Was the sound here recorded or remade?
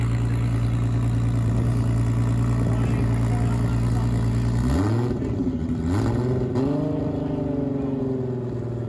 recorded